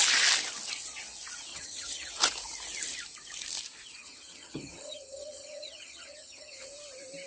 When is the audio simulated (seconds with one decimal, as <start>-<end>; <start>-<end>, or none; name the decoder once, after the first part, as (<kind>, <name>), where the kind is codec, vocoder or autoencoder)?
1.5-2.1 (vocoder, HiFi-GAN); 4.0-6.7